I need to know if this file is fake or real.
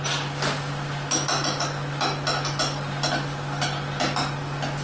real